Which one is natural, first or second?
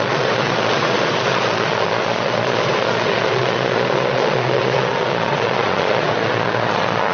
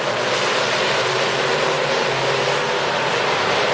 second